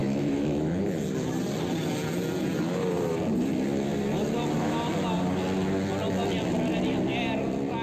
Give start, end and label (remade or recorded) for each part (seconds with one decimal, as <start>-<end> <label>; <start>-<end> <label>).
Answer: 0.0-0.8 remade; 0.8-7.8 recorded